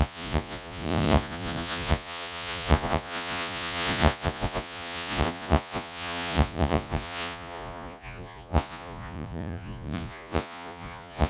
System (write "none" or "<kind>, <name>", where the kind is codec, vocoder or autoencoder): vocoder, Vocos